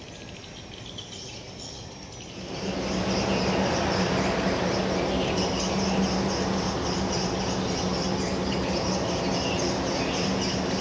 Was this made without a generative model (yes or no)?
yes